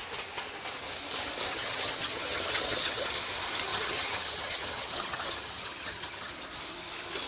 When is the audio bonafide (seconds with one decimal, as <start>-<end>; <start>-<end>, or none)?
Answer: 0.0-1.5; 3.1-3.7; 6.3-7.3